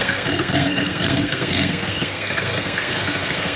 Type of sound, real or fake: fake